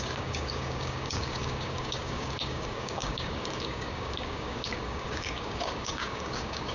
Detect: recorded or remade remade